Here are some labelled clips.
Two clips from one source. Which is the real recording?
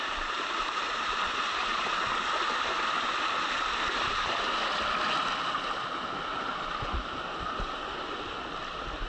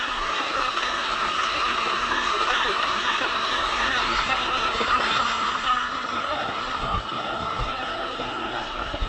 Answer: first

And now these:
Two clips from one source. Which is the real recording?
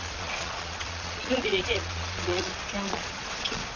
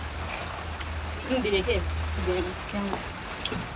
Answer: second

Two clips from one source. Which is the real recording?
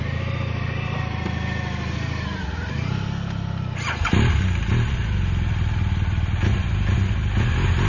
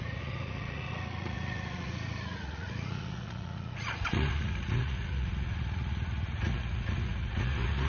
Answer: first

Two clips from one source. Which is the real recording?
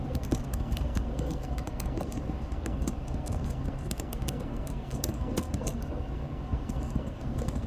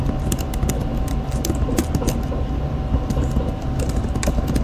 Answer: second